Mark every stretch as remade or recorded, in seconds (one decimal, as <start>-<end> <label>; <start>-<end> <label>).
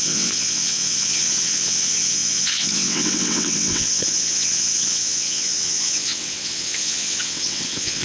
0.0-8.0 remade